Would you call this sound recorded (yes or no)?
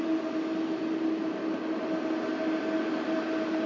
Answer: yes